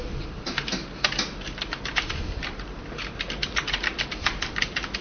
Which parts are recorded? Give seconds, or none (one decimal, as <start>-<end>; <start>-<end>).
0.0-5.0